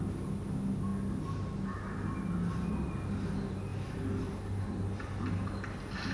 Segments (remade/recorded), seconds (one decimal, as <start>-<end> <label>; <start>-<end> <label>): 0.0-6.1 recorded